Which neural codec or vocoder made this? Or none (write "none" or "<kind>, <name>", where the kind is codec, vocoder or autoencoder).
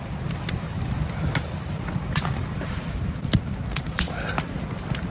vocoder, BigVGAN v2